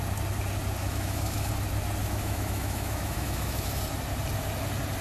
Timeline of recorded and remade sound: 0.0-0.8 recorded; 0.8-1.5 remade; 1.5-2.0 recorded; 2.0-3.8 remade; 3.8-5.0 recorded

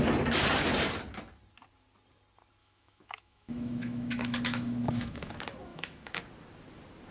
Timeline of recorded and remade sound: 0.0-2.6 recorded; 2.6-5.3 remade; 5.3-5.7 recorded; 5.7-6.2 remade; 6.2-7.1 recorded

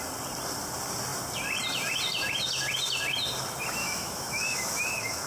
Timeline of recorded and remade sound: 0.0-3.8 recorded; 3.8-5.3 remade

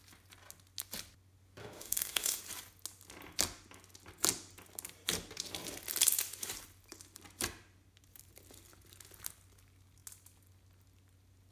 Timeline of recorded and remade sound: 0.0-1.6 recorded; 1.6-2.4 remade; 2.4-11.5 recorded

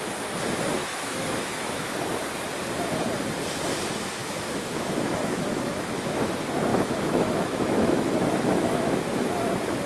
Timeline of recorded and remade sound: 0.0-0.8 recorded; 0.8-2.0 remade; 2.0-4.2 recorded; 4.2-6.3 remade; 6.3-6.7 recorded; 6.7-9.0 remade; 9.0-9.9 recorded